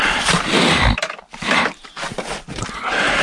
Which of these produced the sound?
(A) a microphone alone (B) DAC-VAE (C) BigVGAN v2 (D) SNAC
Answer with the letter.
A